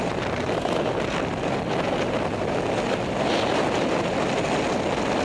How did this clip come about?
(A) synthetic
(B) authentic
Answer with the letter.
B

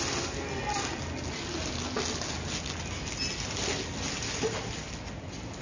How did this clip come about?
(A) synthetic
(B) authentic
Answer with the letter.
B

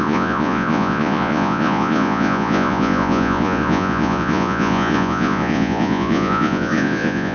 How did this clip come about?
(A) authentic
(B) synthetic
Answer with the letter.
B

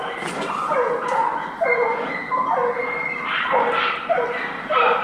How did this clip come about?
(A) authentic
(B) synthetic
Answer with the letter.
A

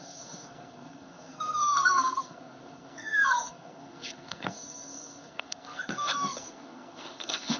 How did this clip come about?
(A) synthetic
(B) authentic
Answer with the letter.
A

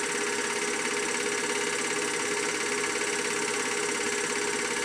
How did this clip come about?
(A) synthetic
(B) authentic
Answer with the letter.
B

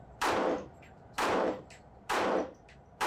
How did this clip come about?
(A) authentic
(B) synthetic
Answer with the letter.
B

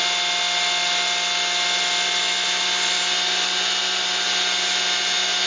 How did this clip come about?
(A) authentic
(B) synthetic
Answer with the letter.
A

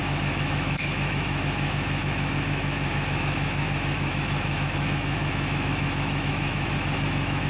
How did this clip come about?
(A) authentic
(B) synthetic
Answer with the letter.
B